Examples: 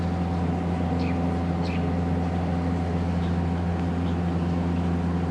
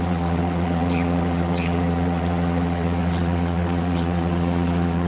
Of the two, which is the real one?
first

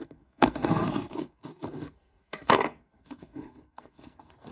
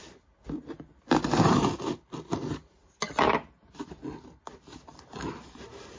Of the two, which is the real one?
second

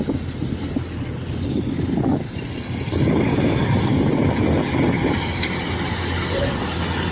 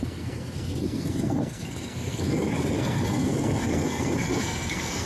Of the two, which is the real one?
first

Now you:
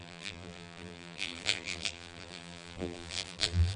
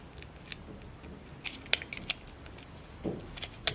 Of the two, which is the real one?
second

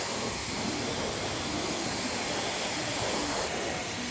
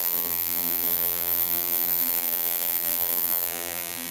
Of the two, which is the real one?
first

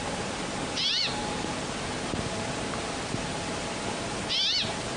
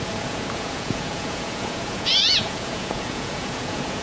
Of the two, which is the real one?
first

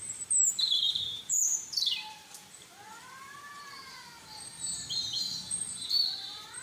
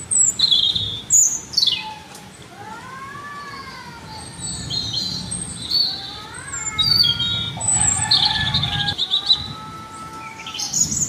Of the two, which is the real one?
second